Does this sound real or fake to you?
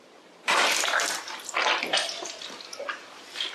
fake